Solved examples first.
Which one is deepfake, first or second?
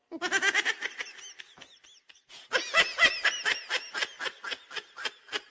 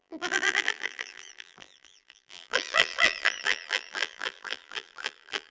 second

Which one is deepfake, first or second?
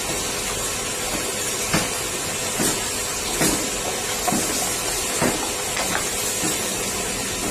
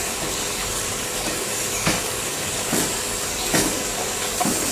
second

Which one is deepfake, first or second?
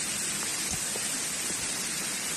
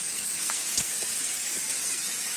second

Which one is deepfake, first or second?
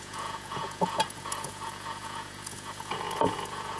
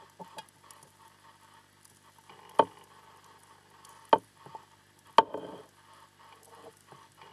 first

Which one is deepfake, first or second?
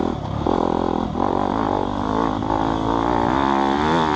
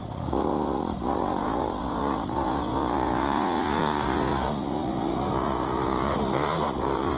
second